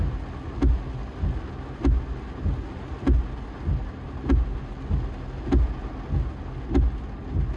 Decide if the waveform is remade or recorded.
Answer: recorded